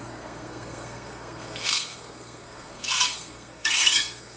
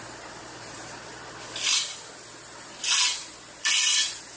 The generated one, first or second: first